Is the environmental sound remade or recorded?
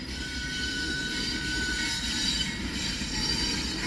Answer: remade